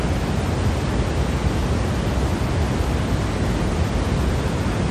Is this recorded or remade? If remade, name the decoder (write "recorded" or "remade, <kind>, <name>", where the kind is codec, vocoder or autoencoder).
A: recorded